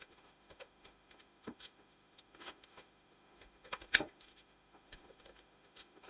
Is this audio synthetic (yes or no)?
yes